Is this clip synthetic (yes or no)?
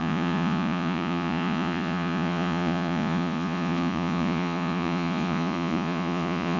yes